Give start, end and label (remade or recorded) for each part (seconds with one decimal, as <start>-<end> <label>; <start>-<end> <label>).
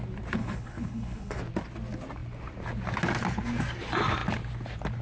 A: 0.0-0.4 recorded; 0.4-1.4 remade; 1.4-5.0 recorded